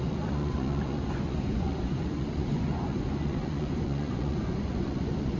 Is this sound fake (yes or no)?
yes